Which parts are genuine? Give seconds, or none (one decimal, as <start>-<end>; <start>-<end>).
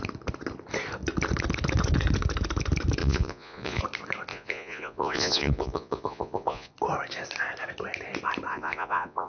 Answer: 0.0-3.0; 3.8-4.3; 6.7-8.5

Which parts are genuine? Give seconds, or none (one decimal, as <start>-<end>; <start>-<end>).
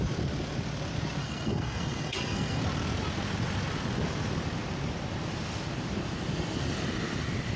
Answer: 0.0-1.2; 2.6-7.6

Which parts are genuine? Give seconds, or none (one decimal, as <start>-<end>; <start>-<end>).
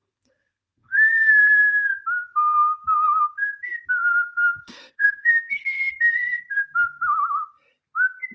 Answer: 1.4-4.4; 5.9-8.3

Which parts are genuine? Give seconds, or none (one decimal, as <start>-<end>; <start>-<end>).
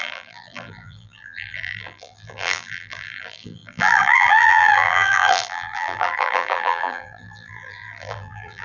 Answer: none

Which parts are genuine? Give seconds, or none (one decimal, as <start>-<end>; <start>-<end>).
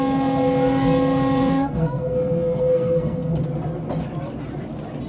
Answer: 0.0-1.4; 3.4-5.1